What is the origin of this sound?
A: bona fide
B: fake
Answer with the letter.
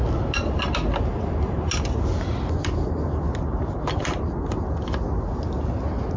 A